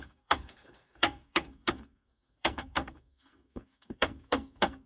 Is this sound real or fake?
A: fake